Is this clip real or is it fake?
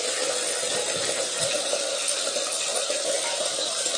real